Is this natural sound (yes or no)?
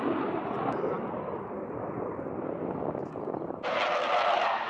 yes